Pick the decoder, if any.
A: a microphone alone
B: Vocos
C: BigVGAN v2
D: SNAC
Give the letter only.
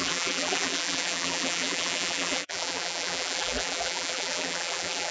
C